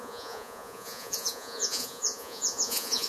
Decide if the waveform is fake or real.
fake